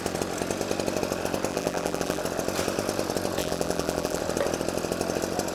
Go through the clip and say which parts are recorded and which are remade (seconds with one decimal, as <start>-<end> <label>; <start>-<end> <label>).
0.0-1.5 recorded; 1.5-2.2 remade; 2.2-3.4 recorded; 3.4-4.2 remade; 4.2-5.5 recorded